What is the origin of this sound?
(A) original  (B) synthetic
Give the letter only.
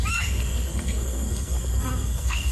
B